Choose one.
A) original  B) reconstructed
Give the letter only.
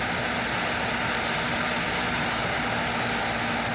A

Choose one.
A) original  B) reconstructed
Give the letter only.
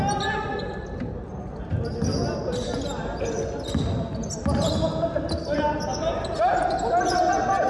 A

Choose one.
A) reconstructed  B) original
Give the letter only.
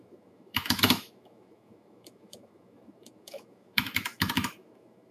A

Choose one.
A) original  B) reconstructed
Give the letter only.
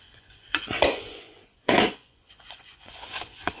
B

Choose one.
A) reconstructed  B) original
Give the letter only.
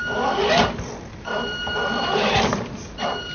B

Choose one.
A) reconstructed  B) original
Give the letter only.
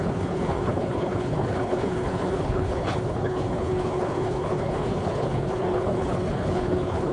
A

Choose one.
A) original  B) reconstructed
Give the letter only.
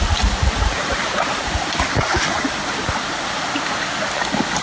A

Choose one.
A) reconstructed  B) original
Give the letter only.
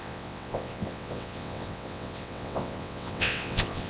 A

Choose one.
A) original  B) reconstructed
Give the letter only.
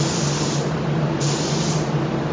A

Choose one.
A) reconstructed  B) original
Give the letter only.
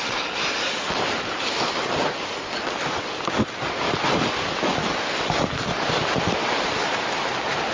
B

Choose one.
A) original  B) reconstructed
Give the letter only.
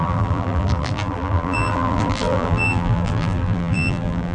B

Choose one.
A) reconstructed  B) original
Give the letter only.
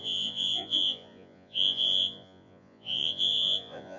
A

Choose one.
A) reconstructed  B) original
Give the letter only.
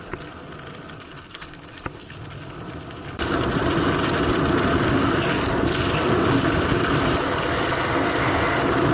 B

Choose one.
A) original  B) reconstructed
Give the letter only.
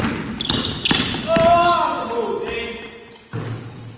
A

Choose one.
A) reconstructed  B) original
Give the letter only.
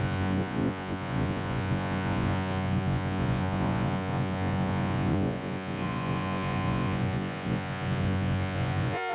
A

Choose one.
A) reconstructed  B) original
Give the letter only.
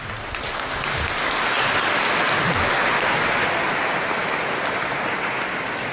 B